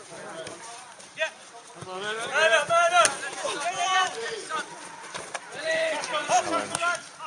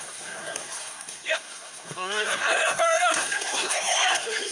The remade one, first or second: second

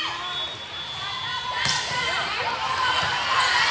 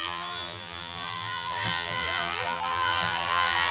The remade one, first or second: second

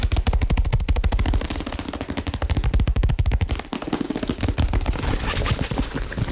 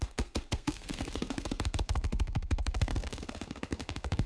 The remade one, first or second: second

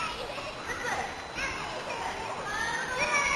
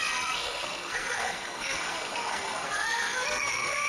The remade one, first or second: second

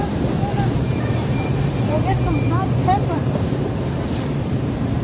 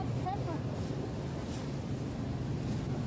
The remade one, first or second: first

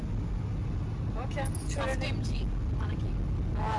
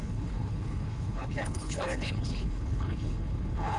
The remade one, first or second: second